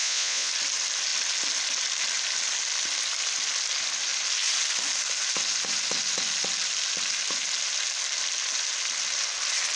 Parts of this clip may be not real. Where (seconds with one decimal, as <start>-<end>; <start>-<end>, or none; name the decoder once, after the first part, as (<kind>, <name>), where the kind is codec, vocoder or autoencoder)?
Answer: 0.0-0.5 (vocoder, Vocos)